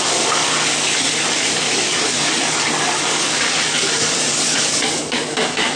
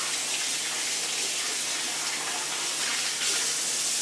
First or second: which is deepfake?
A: first